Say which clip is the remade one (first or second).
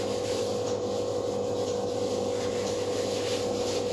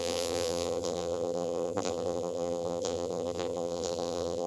second